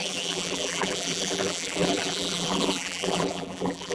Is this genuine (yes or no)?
no